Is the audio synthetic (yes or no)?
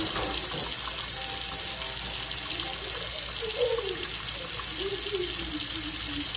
no